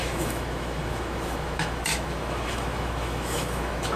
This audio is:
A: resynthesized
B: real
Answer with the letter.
A